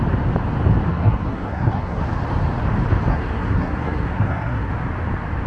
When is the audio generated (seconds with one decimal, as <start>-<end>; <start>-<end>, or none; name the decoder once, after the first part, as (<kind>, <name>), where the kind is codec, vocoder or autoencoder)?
0.9-2.0 (codec, SNAC); 3.1-4.7